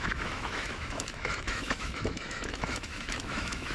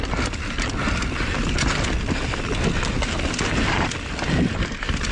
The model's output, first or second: first